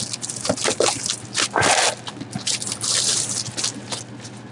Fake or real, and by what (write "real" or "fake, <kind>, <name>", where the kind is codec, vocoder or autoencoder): real